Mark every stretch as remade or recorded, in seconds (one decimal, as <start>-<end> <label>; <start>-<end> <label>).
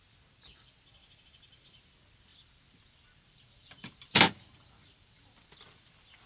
0.0-2.3 recorded; 2.3-6.3 remade